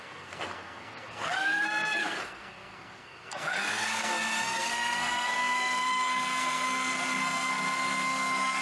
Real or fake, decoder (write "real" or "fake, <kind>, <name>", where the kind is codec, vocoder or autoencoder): fake, codec, SNAC